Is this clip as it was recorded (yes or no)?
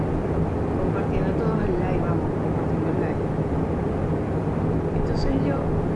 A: yes